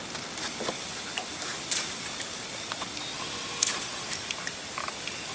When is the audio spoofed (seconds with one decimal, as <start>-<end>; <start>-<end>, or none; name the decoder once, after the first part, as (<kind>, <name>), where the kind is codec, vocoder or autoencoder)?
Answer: none